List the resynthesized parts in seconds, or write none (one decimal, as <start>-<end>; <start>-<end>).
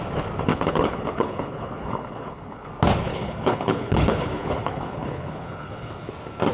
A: 0.5-2.7; 3.1-6.1